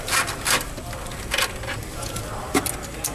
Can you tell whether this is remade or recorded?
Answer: recorded